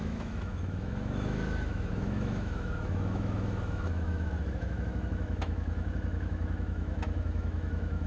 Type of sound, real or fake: fake